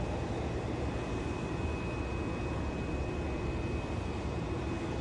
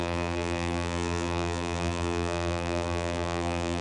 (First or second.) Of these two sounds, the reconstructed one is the second